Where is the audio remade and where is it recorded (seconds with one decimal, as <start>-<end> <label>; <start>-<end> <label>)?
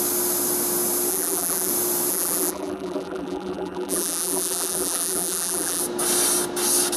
0.0-1.1 recorded; 1.1-1.7 remade; 1.7-2.1 recorded; 2.1-5.8 remade; 5.8-7.0 recorded